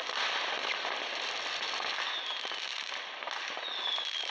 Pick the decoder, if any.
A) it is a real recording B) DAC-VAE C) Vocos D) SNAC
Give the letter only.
A